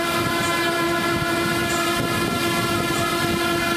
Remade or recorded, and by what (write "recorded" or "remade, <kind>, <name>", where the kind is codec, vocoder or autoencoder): recorded